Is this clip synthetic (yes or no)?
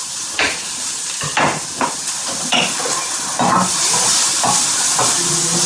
no